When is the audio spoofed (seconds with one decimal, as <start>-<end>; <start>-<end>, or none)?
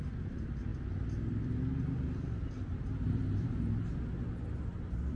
none